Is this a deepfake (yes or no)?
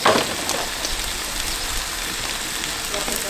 no